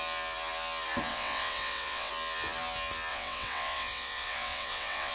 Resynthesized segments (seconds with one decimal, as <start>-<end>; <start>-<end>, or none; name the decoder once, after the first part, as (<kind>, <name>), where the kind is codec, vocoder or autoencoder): 1.1-2.1 (vocoder, WaveNeXt); 3.1-5.1